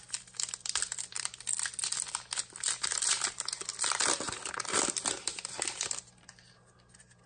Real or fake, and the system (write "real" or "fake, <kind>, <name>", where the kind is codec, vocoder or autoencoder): real